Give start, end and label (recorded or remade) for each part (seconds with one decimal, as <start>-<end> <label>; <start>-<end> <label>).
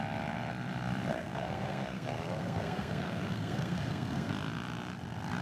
0.0-1.1 recorded; 1.1-4.3 remade; 4.3-5.4 recorded